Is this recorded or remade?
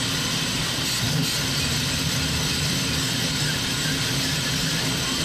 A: recorded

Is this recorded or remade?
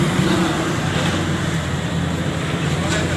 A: remade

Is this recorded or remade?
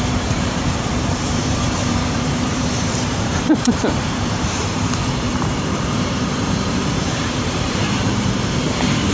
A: remade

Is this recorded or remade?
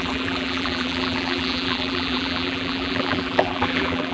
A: remade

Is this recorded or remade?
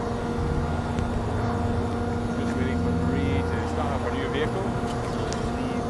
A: recorded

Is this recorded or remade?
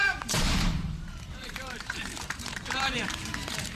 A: remade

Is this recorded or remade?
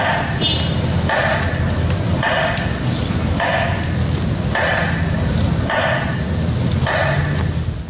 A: recorded